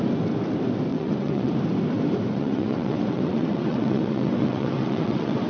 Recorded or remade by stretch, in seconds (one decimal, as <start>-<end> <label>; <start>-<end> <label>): 0.0-0.9 recorded; 0.9-1.5 remade; 1.5-2.3 recorded; 2.3-5.5 remade